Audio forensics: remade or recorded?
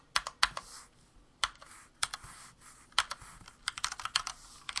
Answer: recorded